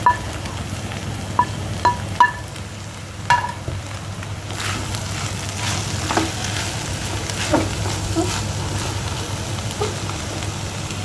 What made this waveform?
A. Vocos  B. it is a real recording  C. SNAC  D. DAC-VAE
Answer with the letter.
B